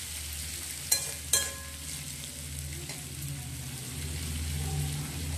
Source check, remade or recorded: recorded